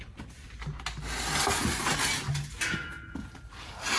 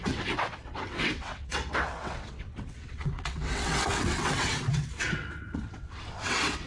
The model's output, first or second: second